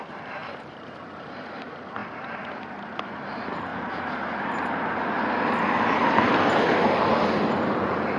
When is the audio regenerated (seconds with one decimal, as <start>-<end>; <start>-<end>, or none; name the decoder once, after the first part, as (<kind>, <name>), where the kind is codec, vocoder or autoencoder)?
0.4-1.6 (vocoder, BigVGAN v2)